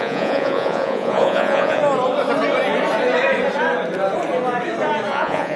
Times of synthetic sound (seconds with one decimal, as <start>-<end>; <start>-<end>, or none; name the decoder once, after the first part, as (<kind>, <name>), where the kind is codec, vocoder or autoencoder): 0.0-1.8 (vocoder, Vocos); 5.1-5.6